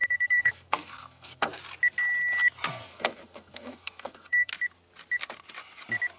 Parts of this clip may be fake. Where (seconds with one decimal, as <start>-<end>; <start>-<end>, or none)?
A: 0.0-1.5; 2.7-4.5